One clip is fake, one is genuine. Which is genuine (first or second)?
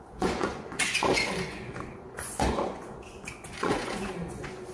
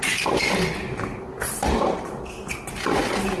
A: second